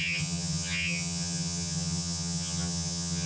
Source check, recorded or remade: remade